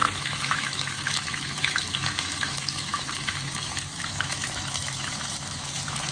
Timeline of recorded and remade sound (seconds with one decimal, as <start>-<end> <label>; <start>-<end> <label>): 0.0-6.1 remade